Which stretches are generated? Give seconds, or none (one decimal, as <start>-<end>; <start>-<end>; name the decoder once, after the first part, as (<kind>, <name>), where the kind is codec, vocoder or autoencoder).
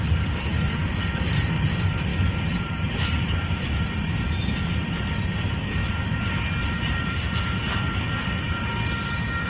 0.0-5.8 (vocoder, BigVGAN v2); 6.6-9.5